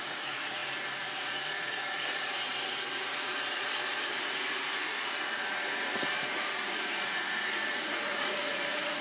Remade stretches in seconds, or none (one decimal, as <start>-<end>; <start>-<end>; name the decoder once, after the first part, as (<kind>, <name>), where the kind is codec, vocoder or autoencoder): 0.0-9.0 (vocoder, Vocos)